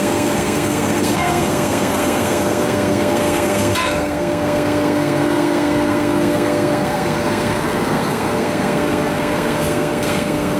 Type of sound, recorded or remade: remade